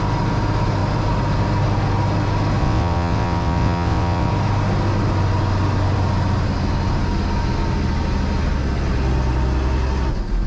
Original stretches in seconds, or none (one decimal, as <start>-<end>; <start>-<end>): 0.0-2.6; 4.3-10.5